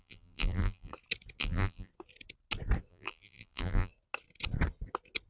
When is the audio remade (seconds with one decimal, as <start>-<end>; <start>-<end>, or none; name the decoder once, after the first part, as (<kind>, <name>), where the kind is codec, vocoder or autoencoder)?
0.0-0.9 (vocoder, BigVGAN v2); 1.4-1.9; 2.9-3.9